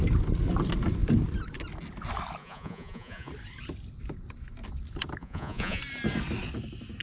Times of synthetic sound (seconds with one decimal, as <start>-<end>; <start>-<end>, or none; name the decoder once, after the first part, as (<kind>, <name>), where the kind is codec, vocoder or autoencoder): 2.4-3.3 (vocoder, Vocos); 5.2-5.8